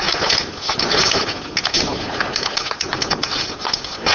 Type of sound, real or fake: real